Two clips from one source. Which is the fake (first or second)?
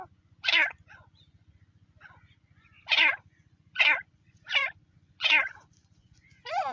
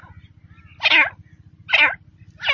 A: first